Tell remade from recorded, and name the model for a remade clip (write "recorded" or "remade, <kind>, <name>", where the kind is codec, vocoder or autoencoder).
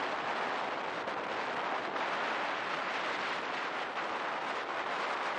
recorded